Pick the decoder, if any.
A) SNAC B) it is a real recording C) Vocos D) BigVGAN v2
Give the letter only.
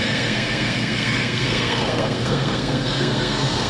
A